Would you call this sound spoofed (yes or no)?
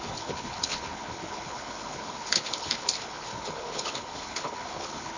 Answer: yes